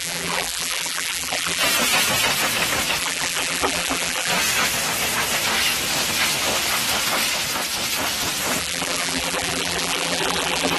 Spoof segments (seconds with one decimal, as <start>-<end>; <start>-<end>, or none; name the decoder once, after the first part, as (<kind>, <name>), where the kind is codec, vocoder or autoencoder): 0.0-1.6 (vocoder, BigVGAN v2); 3.0-4.3; 8.6-10.8